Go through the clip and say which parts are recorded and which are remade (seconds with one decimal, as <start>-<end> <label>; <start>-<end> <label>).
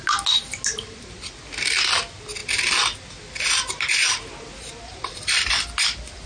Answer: 0.0-6.3 recorded